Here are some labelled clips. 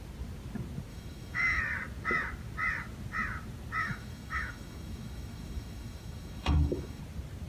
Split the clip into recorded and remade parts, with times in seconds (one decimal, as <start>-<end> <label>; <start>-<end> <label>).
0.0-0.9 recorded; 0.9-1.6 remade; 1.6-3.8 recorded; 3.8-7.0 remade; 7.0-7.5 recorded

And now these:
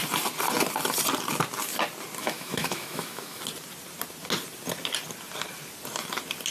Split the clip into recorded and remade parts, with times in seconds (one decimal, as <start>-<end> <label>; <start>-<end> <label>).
0.0-2.2 recorded; 2.2-3.4 remade; 3.4-6.5 recorded

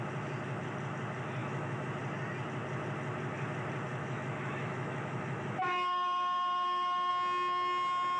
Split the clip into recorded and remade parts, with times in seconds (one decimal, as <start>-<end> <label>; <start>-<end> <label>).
0.0-1.4 recorded; 1.4-1.9 remade; 1.9-3.9 recorded; 3.9-7.1 remade; 7.1-8.2 recorded